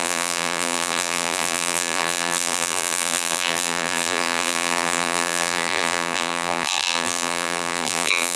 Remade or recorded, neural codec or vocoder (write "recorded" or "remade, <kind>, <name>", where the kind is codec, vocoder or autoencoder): remade, vocoder, BigVGAN v2